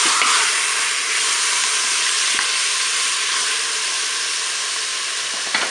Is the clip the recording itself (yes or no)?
yes